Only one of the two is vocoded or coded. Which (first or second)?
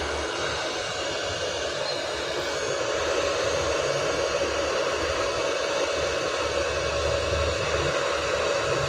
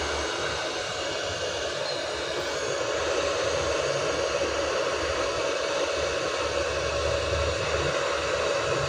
second